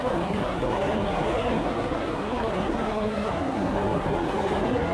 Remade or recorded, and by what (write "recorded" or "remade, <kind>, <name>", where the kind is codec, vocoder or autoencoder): remade, codec, SNAC